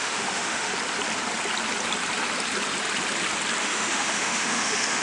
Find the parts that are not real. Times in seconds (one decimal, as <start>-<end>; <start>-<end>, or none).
0.0-0.7; 3.6-5.0